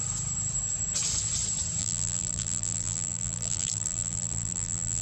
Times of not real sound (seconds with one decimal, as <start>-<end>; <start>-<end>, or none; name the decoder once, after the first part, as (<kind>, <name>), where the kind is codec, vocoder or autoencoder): 1.8-5.0 (vocoder, BigVGAN v2)